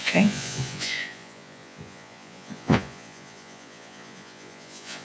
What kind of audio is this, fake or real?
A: fake